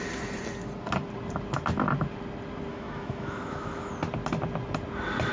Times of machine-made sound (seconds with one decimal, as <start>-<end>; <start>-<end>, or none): 2.7-3.9